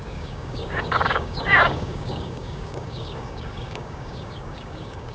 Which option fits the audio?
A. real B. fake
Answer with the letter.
B